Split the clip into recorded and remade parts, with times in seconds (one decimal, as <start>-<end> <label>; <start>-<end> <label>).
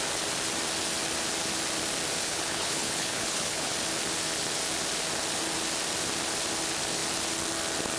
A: 0.0-2.2 recorded; 2.2-3.7 remade; 3.7-8.0 recorded